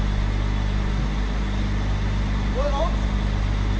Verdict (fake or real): real